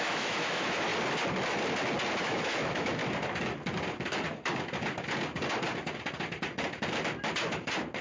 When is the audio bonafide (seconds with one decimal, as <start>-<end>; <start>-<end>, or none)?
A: 0.9-2.2; 3.0-8.0